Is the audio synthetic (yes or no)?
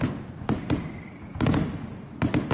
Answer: no